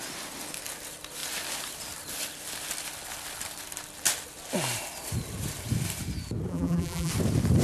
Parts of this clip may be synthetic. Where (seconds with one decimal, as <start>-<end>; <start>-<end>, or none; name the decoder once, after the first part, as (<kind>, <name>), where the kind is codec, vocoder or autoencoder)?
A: 6.5-7.1 (vocoder, BigVGAN v2)